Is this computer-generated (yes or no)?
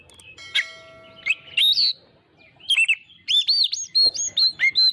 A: no